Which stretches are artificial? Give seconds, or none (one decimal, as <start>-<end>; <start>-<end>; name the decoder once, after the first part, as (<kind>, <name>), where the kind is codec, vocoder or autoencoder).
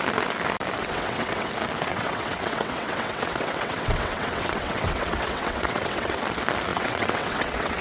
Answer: 0.8-1.5 (vocoder, WaveNeXt); 1.9-6.2; 6.7-7.8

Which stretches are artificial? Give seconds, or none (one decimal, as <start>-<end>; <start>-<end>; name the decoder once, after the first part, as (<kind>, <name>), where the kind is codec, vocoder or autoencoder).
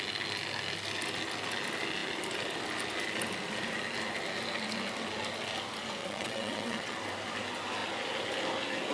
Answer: 6.0-7.0 (vocoder, WaveNeXt)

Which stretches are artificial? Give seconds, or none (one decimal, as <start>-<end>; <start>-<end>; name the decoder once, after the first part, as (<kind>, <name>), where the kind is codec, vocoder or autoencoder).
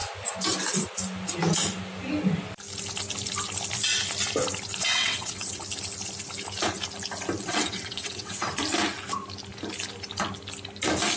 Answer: 4.8-5.6 (vocoder, WaveNeXt); 7.4-8.5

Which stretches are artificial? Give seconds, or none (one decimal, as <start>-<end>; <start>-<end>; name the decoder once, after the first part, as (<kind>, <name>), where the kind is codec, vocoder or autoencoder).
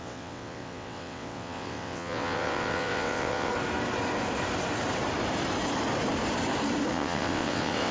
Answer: 0.0-3.5 (vocoder, WaveNeXt); 6.9-7.9